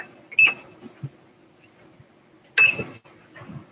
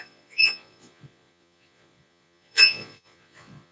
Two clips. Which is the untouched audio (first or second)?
first